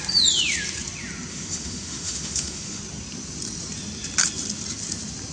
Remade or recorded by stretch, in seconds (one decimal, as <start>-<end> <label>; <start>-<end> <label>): 0.0-1.3 recorded; 1.3-2.8 remade; 2.8-5.3 recorded